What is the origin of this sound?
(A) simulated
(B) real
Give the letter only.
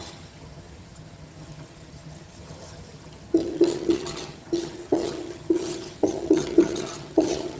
A